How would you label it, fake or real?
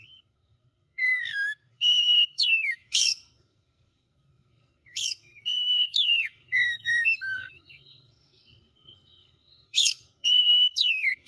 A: fake